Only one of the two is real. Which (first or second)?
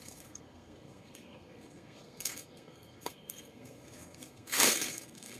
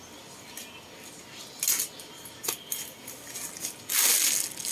second